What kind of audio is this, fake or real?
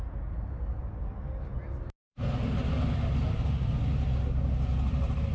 real